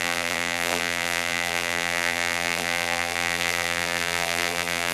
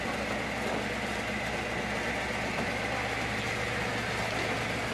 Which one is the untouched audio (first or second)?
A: second